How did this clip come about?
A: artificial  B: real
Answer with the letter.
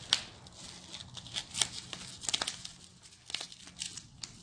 B